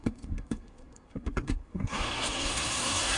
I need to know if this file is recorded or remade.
remade